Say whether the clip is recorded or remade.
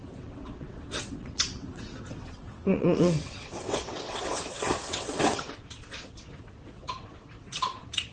remade